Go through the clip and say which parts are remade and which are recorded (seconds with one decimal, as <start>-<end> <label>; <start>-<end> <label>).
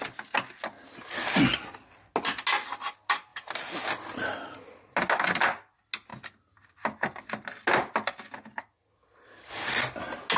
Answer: 0.0-10.4 recorded